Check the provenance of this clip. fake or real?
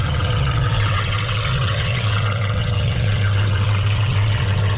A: fake